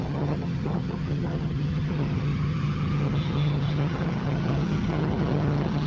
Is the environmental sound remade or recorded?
remade